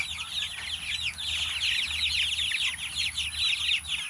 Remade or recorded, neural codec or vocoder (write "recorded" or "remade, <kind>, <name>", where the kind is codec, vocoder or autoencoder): recorded